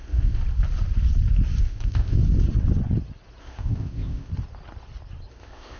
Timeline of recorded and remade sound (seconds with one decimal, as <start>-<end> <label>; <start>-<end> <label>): 0.0-0.4 remade; 0.4-1.6 recorded; 1.6-2.2 remade; 2.2-3.4 recorded; 3.4-4.3 remade; 4.3-5.3 recorded; 5.3-5.8 remade